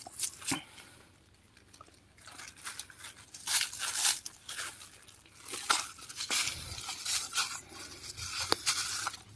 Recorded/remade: recorded